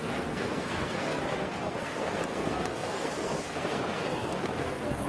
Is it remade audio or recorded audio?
remade